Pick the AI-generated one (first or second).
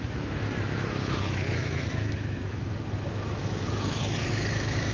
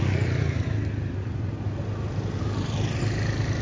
first